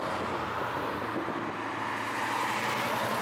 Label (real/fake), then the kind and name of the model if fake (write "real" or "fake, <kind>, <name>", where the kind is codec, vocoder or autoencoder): real